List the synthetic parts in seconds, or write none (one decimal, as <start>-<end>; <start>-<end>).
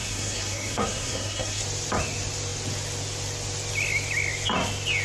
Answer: 0.0-1.6